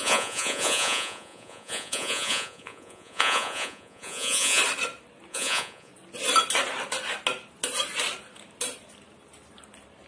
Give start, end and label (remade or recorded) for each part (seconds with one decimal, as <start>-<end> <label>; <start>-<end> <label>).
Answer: 0.0-4.6 remade; 4.6-5.3 recorded; 5.3-5.9 remade; 5.9-10.1 recorded

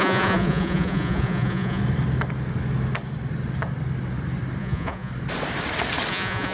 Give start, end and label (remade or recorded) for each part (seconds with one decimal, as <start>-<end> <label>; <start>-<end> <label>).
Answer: 0.0-1.8 remade; 1.8-4.6 recorded; 4.6-5.1 remade; 5.1-6.1 recorded; 6.1-6.5 remade

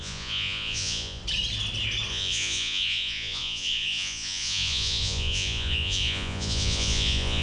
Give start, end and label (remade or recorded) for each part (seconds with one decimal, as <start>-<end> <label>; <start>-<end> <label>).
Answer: 0.0-1.2 remade; 1.2-2.1 recorded; 2.1-7.4 remade